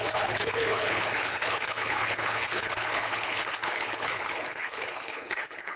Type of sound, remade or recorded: remade